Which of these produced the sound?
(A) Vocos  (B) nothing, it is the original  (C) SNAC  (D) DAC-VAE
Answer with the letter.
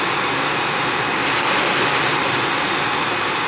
B